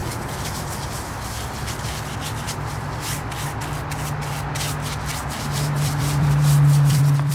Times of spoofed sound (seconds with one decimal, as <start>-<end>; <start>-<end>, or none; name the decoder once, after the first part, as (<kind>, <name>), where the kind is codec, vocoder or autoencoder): 5.1-7.3 (vocoder, BigVGAN v2)